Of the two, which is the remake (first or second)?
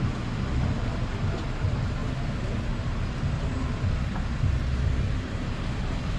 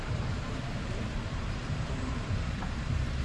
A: second